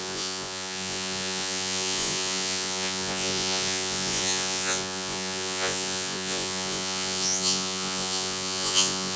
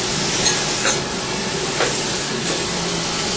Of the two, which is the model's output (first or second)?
first